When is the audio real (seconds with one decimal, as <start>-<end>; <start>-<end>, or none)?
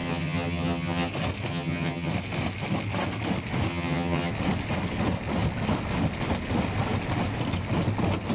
1.1-1.5; 2.1-3.7; 4.3-8.3